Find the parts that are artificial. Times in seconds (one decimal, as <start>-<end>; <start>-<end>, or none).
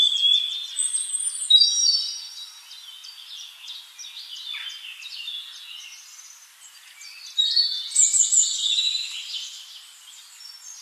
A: none